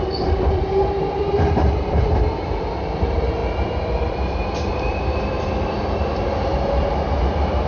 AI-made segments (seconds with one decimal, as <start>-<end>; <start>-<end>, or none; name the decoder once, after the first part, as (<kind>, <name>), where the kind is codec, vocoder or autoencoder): 0.0-7.7 (vocoder, BigVGAN v2)

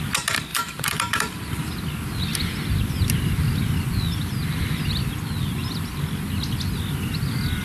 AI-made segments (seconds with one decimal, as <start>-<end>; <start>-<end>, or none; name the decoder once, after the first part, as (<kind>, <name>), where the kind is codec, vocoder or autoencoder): 0.5-1.7 (vocoder, BigVGAN v2)

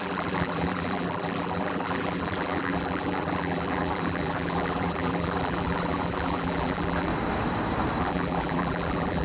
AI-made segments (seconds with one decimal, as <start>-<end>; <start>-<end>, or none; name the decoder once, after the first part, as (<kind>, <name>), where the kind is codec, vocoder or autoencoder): 0.0-7.1 (vocoder, BigVGAN v2); 8.0-9.2

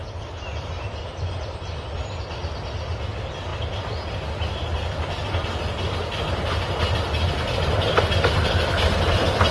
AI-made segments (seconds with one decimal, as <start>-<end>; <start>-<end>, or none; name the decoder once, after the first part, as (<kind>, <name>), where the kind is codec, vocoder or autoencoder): 0.5-1.7 (vocoder, BigVGAN v2)

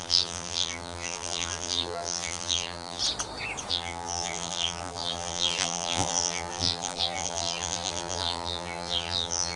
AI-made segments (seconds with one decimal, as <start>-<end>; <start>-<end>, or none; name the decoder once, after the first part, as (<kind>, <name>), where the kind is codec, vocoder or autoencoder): 0.0-3.0 (vocoder, BigVGAN v2); 3.7-9.6

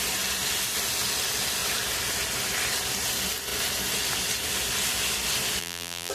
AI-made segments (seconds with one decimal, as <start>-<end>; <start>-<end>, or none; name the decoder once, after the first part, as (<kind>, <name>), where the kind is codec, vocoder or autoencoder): 5.6-6.1 (vocoder, BigVGAN v2)